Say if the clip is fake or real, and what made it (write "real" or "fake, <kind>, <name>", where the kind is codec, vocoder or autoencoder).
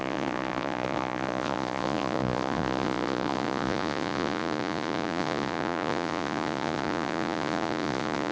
fake, vocoder, Vocos